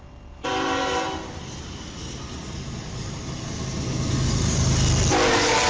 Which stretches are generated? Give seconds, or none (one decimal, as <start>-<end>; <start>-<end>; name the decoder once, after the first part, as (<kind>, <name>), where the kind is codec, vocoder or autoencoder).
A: none